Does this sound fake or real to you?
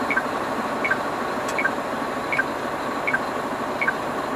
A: real